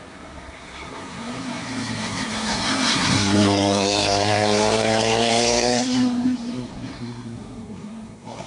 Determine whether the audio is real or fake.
fake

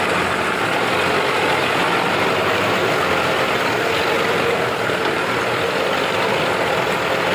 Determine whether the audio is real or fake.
real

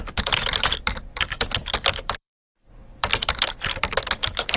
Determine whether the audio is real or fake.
fake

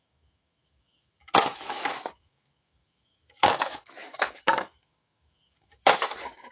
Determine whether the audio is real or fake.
fake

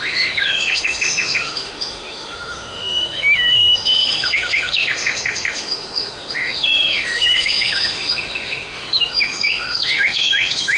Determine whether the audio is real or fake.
fake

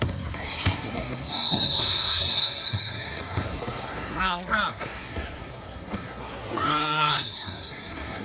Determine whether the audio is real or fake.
fake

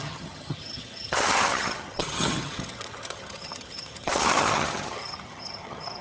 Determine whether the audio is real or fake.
fake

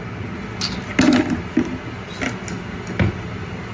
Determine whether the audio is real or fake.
real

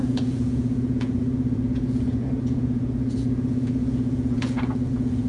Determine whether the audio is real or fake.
fake